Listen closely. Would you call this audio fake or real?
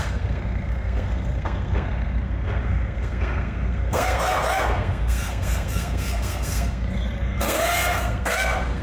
fake